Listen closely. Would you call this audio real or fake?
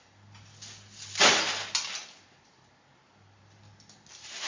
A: real